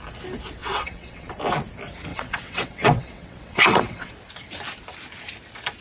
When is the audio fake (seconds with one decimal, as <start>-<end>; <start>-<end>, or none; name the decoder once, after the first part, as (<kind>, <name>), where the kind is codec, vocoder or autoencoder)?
0.6-1.3 (vocoder, WaveNeXt); 2.1-4.1